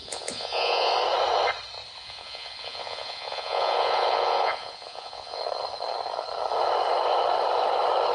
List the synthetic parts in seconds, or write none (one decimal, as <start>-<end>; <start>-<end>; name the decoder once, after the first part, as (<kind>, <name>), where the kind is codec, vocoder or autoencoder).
0.0-0.9 (vocoder, Vocos); 2.0-5.4